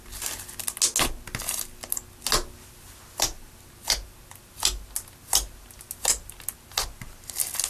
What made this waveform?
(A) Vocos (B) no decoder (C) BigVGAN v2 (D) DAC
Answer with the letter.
B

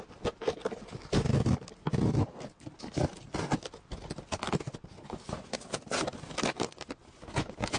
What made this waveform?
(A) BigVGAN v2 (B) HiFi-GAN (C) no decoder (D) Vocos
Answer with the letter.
C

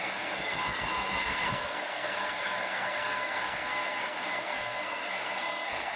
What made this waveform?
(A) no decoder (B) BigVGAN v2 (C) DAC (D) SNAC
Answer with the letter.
D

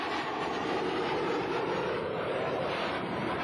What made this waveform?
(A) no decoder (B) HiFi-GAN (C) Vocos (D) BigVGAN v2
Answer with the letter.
D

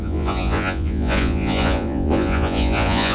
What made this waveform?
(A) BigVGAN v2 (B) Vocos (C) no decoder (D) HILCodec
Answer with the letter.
B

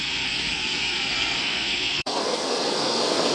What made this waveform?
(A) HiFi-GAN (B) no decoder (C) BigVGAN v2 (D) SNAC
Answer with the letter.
D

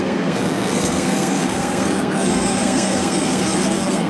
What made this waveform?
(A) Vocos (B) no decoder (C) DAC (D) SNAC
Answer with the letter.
D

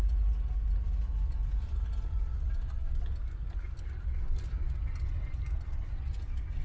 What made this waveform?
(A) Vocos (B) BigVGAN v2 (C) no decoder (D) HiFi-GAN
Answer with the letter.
C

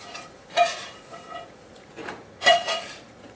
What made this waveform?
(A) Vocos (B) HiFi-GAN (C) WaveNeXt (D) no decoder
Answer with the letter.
A